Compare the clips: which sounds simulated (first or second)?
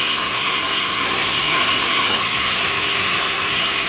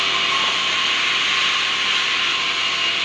first